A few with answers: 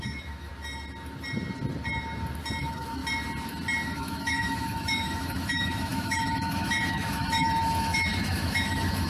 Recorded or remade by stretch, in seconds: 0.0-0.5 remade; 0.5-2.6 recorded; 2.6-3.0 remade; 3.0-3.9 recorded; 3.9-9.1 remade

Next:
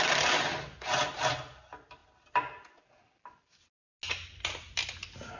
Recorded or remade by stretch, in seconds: 0.0-5.4 recorded

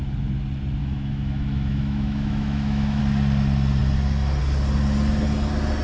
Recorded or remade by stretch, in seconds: 0.0-0.8 recorded; 0.8-3.0 remade; 3.0-5.8 recorded

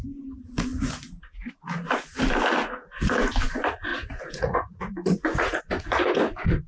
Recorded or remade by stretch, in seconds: 0.0-0.7 recorded; 0.7-1.5 remade; 1.5-3.9 recorded; 3.9-5.6 remade; 5.6-6.7 recorded

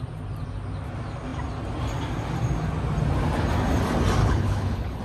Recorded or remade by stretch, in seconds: 0.0-4.2 recorded; 4.2-5.0 remade

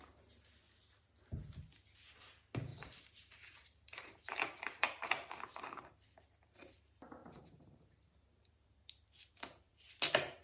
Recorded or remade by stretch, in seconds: 0.0-2.7 recorded; 2.7-5.1 remade; 5.1-7.2 recorded; 7.2-8.5 remade; 8.5-10.4 recorded